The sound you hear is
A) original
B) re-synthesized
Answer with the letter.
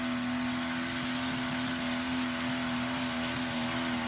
A